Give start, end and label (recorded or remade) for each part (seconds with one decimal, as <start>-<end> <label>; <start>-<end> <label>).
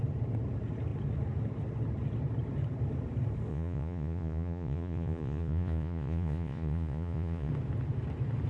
0.0-3.5 recorded; 3.5-7.5 remade; 7.5-8.5 recorded